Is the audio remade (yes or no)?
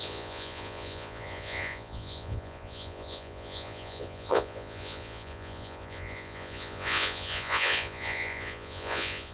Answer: yes